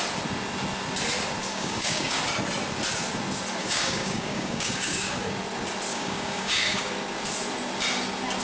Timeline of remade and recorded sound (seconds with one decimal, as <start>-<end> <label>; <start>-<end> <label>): 0.0-1.5 recorded; 1.5-2.2 remade; 2.2-3.6 recorded; 3.6-5.2 remade; 5.2-5.9 recorded; 5.9-6.9 remade; 6.9-8.4 recorded